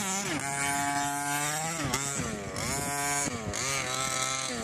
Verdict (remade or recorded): recorded